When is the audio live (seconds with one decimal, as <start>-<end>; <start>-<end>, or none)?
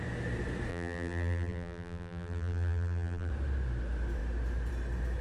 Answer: 0.0-0.7; 3.3-5.2